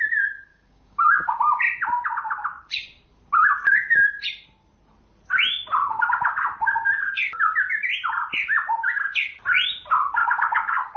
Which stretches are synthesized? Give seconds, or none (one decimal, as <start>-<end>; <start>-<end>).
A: 0.5-1.4; 10.2-11.0